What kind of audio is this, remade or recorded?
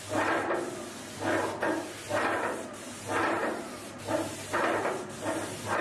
recorded